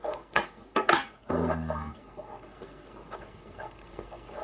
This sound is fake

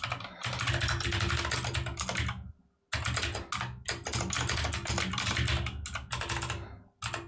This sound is real